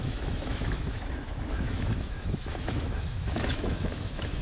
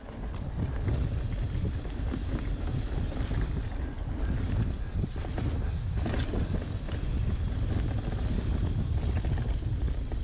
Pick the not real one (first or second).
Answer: first